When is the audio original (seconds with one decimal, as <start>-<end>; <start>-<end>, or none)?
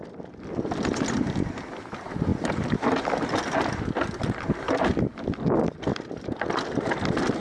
0.0-7.4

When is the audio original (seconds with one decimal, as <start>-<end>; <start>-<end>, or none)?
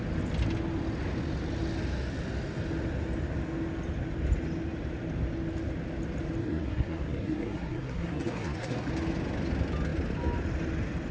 0.0-6.4; 8.9-11.1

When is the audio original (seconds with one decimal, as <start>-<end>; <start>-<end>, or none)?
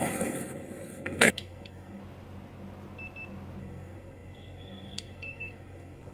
2.0-3.6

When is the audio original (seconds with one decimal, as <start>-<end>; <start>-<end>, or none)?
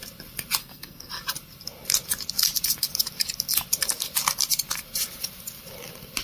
0.0-0.6; 1.1-6.2